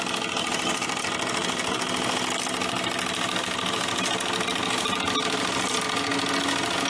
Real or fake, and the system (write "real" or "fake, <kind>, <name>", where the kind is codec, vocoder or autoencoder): real